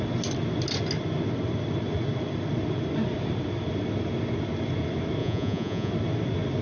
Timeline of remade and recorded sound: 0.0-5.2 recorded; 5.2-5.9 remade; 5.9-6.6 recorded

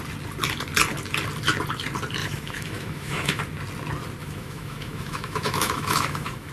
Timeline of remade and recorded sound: 0.0-2.2 recorded; 2.2-3.4 remade; 3.4-4.2 recorded; 4.2-6.5 remade

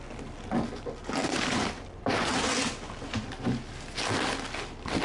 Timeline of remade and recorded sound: 0.0-1.2 recorded; 1.2-2.7 remade; 2.7-5.0 recorded

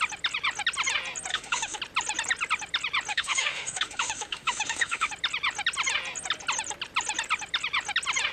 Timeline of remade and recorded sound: 0.0-1.3 recorded; 1.3-1.8 remade; 1.8-3.1 recorded; 3.1-5.1 remade; 5.1-8.3 recorded

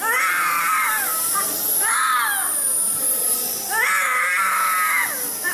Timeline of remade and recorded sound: 0.0-5.5 recorded

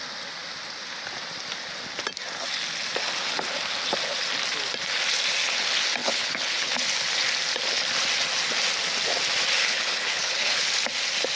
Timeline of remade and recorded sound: 0.0-6.0 recorded; 6.0-6.7 remade; 6.7-9.6 recorded; 9.6-10.7 remade; 10.7-11.4 recorded

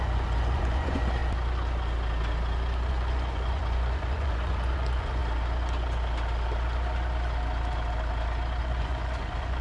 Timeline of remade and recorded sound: 0.0-1.2 remade; 1.2-2.9 recorded; 2.9-5.2 remade; 5.2-8.6 recorded; 8.6-9.6 remade

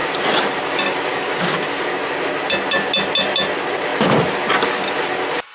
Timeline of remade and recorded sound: 0.0-1.1 recorded; 1.1-1.7 remade; 1.7-5.5 recorded